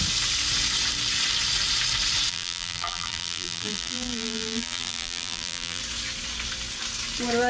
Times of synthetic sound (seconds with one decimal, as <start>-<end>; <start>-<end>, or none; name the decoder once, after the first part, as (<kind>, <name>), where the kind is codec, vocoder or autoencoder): 2.3-5.8 (vocoder, BigVGAN v2)